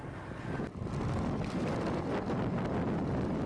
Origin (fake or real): real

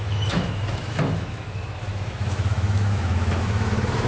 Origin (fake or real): fake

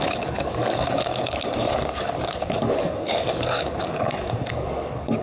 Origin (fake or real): fake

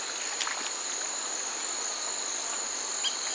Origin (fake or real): real